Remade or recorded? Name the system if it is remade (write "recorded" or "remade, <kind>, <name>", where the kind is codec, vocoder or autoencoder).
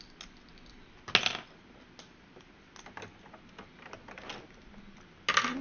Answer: recorded